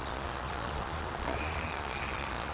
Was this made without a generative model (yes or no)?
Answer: no